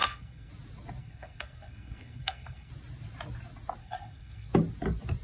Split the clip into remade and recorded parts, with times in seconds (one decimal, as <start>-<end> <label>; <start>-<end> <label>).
0.0-0.5 remade; 0.5-1.0 recorded; 1.0-2.7 remade; 2.7-3.8 recorded; 3.8-4.5 remade; 4.5-5.2 recorded